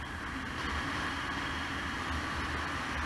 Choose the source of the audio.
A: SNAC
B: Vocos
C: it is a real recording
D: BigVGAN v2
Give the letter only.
C